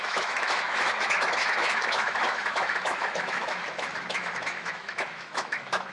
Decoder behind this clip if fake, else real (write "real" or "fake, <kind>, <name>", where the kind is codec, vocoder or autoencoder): fake, autoencoder, DAC-VAE